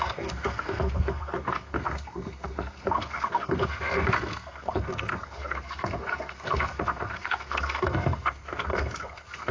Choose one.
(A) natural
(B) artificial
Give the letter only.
B